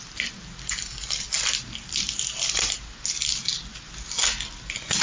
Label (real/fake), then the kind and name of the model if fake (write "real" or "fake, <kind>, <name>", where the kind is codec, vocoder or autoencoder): real